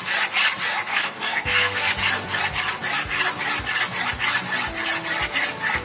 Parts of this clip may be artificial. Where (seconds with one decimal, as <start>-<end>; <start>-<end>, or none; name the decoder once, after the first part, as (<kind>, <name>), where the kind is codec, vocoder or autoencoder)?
0.9-1.9 (codec, SNAC)